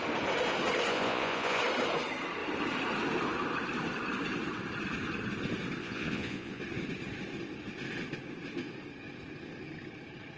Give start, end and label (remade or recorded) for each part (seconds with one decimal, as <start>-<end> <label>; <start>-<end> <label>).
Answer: 0.0-0.9 recorded; 0.9-1.6 remade; 1.6-5.8 recorded; 5.8-6.6 remade; 6.6-10.4 recorded

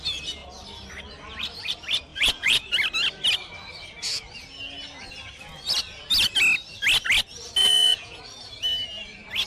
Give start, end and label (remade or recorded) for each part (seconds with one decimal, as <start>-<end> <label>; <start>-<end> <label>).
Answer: 0.0-2.1 recorded; 2.1-2.7 remade; 2.7-7.6 recorded; 7.6-8.2 remade; 8.2-9.5 recorded

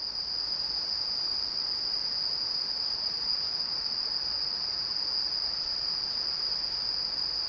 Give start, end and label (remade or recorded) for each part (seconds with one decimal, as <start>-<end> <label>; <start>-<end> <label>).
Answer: 0.0-3.0 recorded; 3.0-6.4 remade; 6.4-7.5 recorded